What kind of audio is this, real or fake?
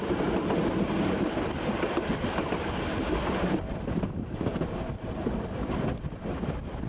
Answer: fake